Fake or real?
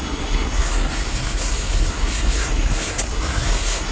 fake